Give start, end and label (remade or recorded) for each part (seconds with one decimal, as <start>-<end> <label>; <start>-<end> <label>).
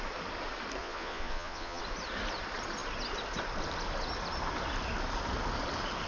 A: 0.0-0.8 recorded; 0.8-1.8 remade; 1.8-6.1 recorded